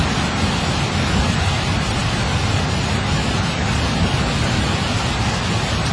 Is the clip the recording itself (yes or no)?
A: yes